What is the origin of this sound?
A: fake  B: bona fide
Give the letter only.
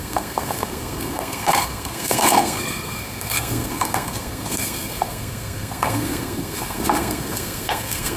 A